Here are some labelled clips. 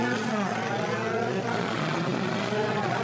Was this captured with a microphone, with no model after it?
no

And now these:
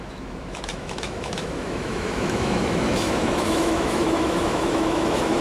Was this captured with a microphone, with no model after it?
no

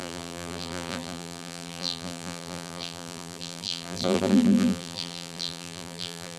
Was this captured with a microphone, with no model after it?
no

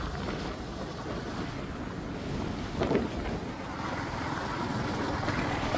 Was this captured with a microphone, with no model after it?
yes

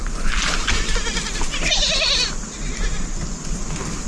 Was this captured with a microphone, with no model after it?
yes